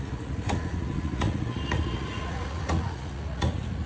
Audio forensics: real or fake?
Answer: fake